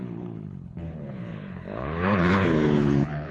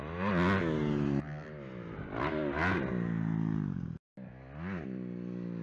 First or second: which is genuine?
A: second